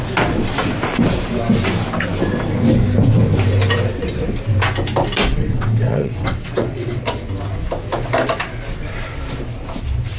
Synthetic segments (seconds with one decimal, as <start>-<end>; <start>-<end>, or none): 5.3-7.0